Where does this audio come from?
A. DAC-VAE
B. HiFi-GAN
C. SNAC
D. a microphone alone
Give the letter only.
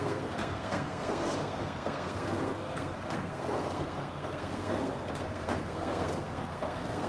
C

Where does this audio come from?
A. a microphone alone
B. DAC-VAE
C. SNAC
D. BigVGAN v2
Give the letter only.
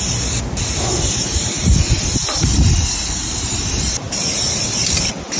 A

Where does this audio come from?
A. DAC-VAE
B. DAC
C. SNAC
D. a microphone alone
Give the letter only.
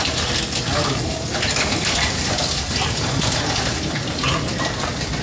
D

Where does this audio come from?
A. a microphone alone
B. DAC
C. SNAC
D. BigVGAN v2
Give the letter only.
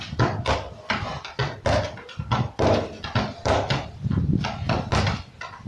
A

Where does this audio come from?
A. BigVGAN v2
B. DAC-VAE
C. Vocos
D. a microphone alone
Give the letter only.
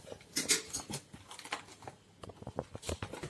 D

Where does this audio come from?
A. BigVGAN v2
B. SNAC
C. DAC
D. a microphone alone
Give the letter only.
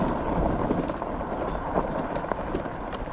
D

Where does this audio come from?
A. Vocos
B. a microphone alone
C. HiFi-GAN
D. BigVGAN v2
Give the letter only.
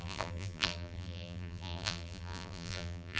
D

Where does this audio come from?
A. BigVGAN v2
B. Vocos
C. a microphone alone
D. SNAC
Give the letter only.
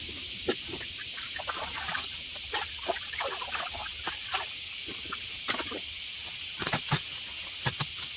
C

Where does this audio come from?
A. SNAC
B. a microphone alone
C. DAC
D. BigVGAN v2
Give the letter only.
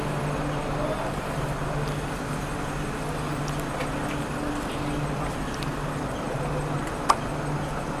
B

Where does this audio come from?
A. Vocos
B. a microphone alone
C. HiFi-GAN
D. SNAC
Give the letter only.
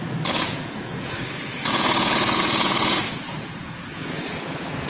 A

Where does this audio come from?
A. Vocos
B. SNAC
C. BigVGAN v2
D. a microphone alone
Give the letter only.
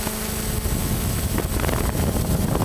D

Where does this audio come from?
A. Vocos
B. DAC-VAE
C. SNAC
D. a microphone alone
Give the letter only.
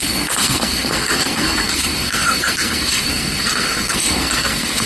C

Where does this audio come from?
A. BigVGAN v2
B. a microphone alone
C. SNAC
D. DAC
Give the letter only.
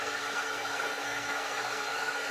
C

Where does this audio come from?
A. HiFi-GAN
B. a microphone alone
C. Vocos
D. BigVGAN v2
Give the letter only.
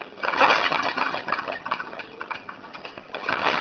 A